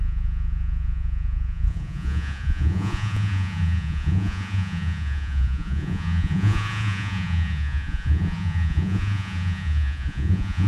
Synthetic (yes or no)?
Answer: yes